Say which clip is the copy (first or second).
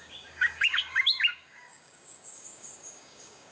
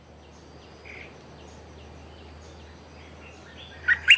first